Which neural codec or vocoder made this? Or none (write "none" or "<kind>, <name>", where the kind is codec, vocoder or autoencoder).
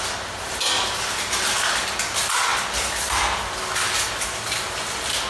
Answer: none